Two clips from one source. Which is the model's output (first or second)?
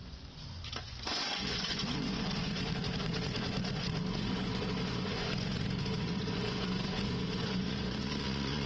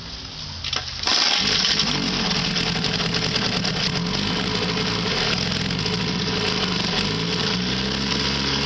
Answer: first